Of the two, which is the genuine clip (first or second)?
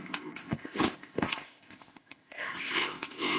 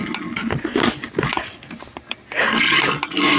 second